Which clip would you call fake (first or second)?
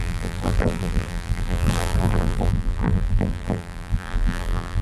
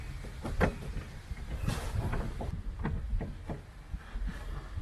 first